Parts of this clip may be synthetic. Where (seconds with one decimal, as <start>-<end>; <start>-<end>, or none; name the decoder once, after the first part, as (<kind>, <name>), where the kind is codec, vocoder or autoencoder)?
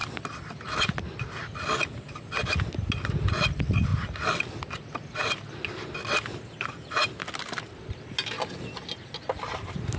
none